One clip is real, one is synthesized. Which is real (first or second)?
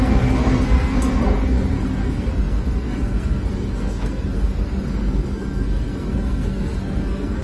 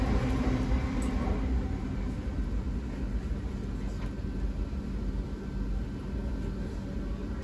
second